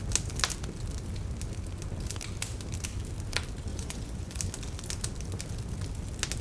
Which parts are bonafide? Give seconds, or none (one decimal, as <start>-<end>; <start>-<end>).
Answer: 0.0-3.7; 4.4-6.4